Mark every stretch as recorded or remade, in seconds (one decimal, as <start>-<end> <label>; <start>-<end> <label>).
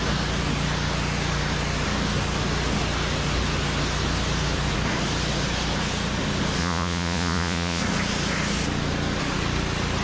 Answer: 0.0-6.6 recorded; 6.6-7.8 remade; 7.8-10.0 recorded